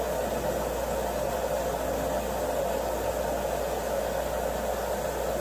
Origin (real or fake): real